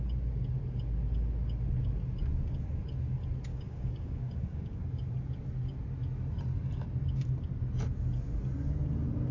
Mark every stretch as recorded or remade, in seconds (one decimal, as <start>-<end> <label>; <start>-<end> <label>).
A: 0.0-3.5 recorded; 3.5-4.8 remade; 4.8-9.3 recorded